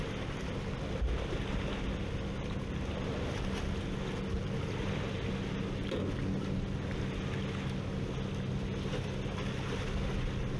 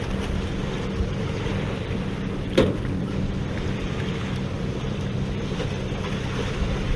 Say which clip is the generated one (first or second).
second